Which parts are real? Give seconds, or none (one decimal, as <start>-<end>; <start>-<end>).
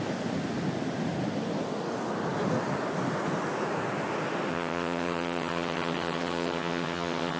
0.0-4.5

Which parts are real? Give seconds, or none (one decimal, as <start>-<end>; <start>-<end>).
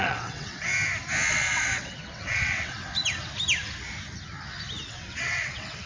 0.7-1.3; 2.8-4.9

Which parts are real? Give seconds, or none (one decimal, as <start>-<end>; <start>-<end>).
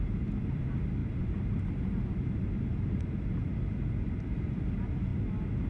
0.0-1.0; 3.2-5.7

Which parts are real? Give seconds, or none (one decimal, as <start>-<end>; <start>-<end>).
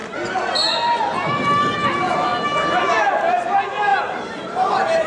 0.0-5.1